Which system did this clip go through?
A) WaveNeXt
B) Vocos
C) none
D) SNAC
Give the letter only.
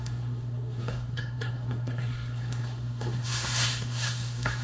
D